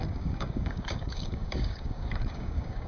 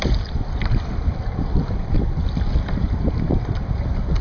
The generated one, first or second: first